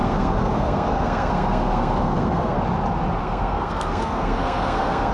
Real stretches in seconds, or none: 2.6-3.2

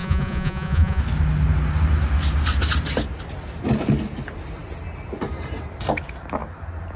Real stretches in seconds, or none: 1.0-7.0

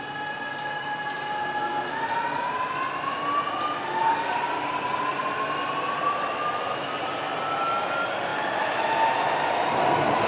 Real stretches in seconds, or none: 0.0-10.3

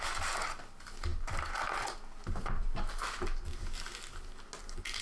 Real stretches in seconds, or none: 0.0-5.0

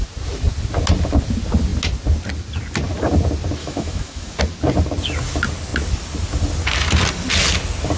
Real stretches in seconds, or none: 0.0-3.6; 4.4-8.0

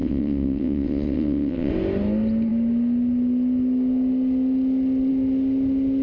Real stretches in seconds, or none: 1.7-6.0

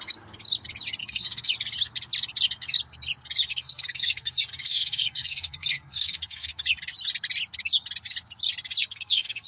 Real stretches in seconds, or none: 0.0-1.0; 1.5-3.5; 6.7-8.8